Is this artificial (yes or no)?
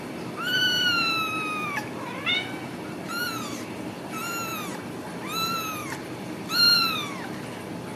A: no